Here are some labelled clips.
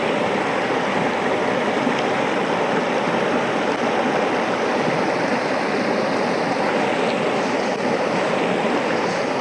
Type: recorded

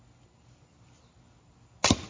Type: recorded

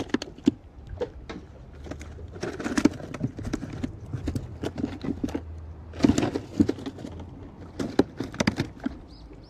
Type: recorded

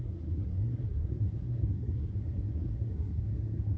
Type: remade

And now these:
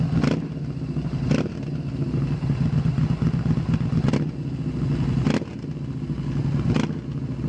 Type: recorded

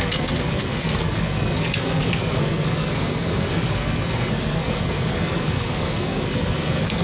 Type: remade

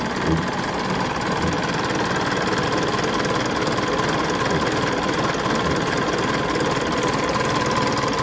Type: recorded